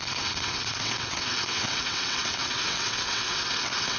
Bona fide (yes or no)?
no